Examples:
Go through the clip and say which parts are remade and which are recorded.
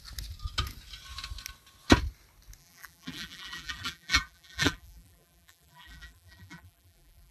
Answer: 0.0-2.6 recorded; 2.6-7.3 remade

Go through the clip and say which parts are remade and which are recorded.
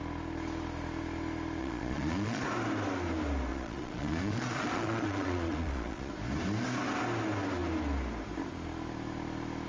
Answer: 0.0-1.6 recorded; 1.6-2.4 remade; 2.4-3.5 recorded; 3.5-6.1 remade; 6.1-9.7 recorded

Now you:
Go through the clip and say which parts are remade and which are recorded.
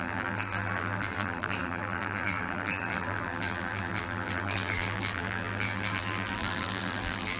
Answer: 0.0-7.4 remade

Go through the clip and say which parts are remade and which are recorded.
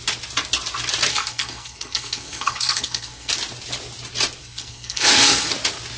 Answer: 0.0-1.1 recorded; 1.1-3.3 remade; 3.3-4.4 recorded; 4.4-5.5 remade; 5.5-6.0 recorded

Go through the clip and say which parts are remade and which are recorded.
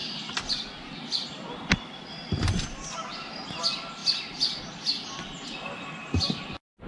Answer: 0.0-2.0 remade; 2.0-4.0 recorded; 4.0-4.7 remade; 4.7-6.9 recorded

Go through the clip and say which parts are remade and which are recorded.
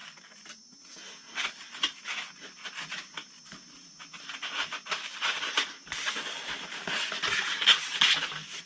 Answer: 0.0-8.7 recorded